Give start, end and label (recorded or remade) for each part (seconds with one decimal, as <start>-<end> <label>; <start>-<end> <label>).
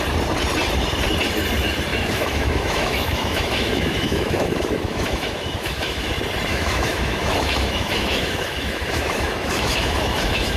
0.0-1.9 recorded; 1.9-6.1 remade; 6.1-6.5 recorded; 6.5-10.6 remade